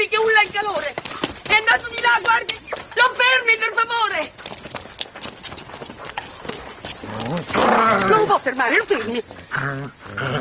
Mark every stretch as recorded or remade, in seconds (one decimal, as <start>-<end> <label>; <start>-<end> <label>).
0.0-10.4 recorded